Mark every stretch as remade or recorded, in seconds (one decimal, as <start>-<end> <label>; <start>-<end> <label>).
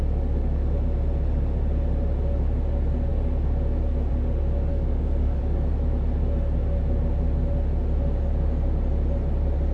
0.0-4.7 recorded; 4.7-5.4 remade; 5.4-9.7 recorded